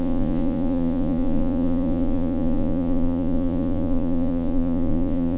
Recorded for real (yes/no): no